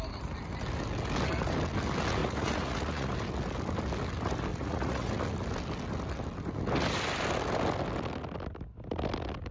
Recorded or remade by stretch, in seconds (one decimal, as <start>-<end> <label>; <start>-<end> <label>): 0.0-2.2 recorded; 2.2-3.1 remade; 3.1-4.5 recorded; 4.5-5.1 remade; 5.1-9.5 recorded